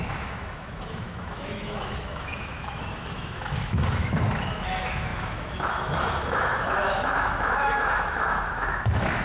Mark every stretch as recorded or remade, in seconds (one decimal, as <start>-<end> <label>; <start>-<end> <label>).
0.0-9.2 remade